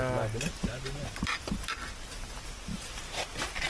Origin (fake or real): real